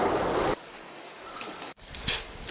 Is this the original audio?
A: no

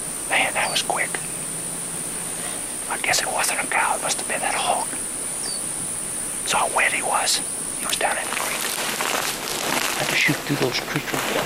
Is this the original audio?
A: yes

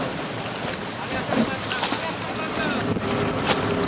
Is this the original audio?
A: yes